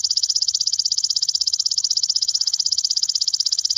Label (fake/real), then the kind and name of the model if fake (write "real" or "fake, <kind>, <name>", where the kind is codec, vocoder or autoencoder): fake, autoencoder, DAC-VAE